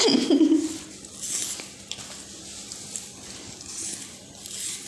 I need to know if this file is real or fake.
real